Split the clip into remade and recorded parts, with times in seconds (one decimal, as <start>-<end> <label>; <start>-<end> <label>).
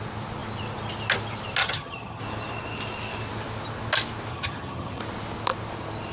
0.0-1.6 recorded; 1.6-2.2 remade; 2.2-4.3 recorded; 4.3-5.0 remade; 5.0-6.1 recorded